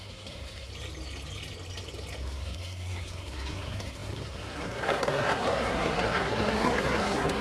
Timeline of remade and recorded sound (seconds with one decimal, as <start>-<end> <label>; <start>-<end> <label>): 0.0-0.7 remade; 0.7-2.2 recorded; 2.2-7.4 remade